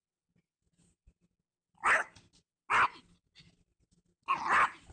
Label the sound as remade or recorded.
recorded